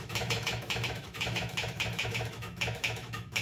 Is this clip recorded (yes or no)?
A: no